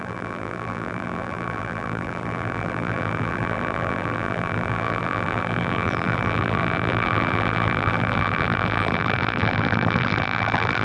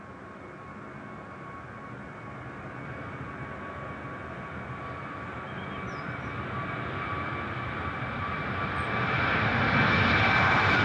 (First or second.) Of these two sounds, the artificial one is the first